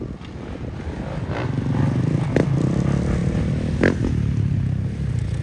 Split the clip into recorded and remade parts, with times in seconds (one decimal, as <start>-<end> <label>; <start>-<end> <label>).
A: 0.0-5.4 recorded